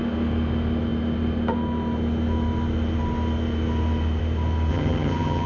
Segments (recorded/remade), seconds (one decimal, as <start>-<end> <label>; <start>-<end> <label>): 0.0-4.7 recorded; 4.7-5.5 remade